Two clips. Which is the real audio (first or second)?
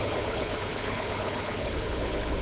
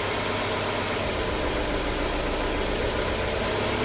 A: second